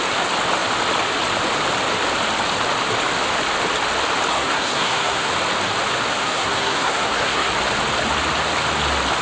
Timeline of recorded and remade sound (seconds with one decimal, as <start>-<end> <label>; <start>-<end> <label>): 0.0-4.3 recorded; 4.3-5.3 remade; 5.3-6.2 recorded; 6.2-7.5 remade; 7.5-9.2 recorded